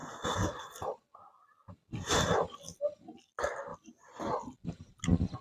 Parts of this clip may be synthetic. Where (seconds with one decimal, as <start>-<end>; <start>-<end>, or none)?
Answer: 3.7-4.2